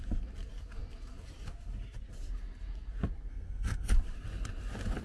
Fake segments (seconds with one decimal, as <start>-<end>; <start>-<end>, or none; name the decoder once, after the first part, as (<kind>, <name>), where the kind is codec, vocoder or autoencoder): 3.3-3.9 (codec, SNAC)